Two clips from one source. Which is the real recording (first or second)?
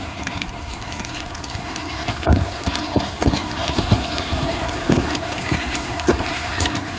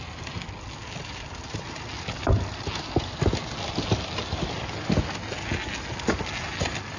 second